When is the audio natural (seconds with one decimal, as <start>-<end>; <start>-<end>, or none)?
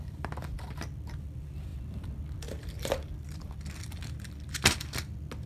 0.0-1.7; 4.3-5.5